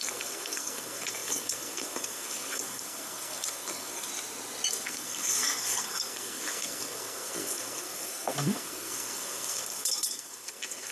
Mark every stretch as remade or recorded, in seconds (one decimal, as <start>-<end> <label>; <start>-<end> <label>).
0.0-4.1 remade; 4.1-4.7 recorded; 4.7-10.9 remade

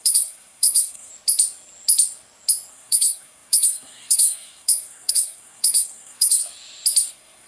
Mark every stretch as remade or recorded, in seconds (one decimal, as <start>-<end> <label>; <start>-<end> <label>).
0.0-1.1 remade; 1.1-2.7 recorded; 2.7-6.4 remade; 6.4-7.1 recorded; 7.1-7.5 remade

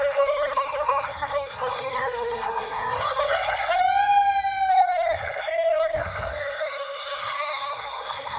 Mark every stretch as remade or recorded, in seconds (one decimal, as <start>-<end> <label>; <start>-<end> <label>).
0.0-3.8 remade; 3.8-4.7 recorded; 4.7-8.4 remade

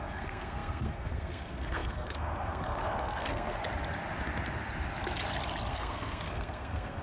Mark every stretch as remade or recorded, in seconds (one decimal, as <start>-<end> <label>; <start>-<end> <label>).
0.0-3.6 remade; 3.6-5.7 recorded; 5.7-7.0 remade

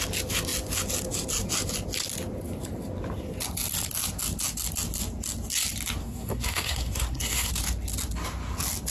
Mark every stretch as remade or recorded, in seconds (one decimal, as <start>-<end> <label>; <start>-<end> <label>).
0.0-6.0 recorded; 6.0-7.5 remade; 7.5-8.9 recorded

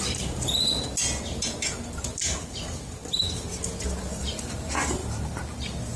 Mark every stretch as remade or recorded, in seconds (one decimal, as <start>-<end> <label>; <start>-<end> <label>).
0.0-6.0 recorded